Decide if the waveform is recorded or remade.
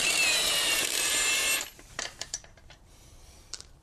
remade